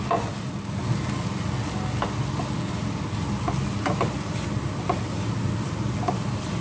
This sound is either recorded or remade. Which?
recorded